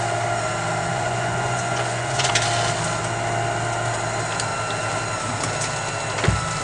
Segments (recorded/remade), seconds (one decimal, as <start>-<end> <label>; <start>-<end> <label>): 0.0-0.9 recorded; 0.9-2.3 remade; 2.3-6.6 recorded